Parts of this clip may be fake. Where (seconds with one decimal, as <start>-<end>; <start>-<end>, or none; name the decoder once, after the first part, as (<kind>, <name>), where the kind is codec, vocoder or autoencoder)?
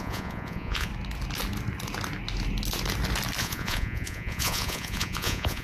0.0-0.9 (vocoder, Vocos); 3.4-5.6